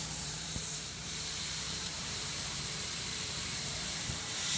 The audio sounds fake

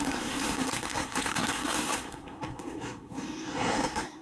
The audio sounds fake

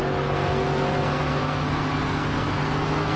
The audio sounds fake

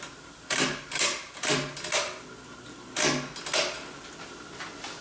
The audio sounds real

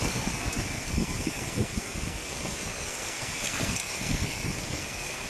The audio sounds fake